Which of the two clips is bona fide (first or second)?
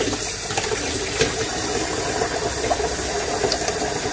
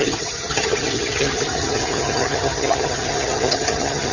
first